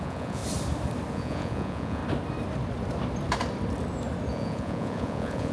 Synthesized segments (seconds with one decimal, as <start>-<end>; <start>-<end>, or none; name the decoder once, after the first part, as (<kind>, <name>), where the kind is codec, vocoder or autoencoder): 0.0-0.4 (vocoder, Vocos); 1.1-2.0; 4.3-5.5

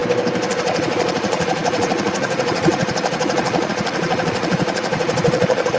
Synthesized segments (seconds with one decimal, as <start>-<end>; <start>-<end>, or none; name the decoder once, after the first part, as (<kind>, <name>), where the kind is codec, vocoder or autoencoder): 0.5-5.8 (vocoder, Vocos)

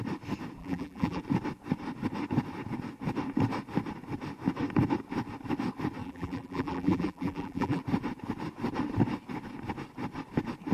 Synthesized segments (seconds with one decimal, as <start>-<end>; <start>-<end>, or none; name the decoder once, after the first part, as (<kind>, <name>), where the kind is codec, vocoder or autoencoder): 0.6-1.2 (vocoder, BigVGAN v2); 6.0-7.8

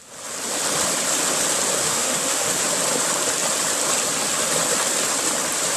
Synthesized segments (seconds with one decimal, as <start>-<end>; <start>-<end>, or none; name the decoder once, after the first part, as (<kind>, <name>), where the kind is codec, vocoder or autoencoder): 1.8-2.6 (autoencoder, DAC-VAE)